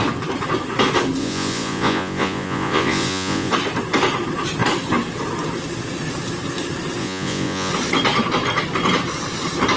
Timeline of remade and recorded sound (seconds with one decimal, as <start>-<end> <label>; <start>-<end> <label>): 0.0-1.2 recorded; 1.2-3.5 remade; 3.5-7.0 recorded; 7.0-7.7 remade; 7.7-9.8 recorded